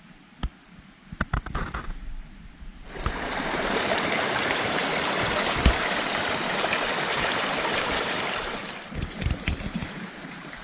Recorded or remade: remade